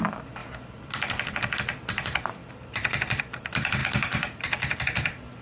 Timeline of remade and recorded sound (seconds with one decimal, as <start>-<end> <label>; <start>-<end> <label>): 0.0-0.4 remade; 0.4-1.9 recorded; 1.9-5.4 remade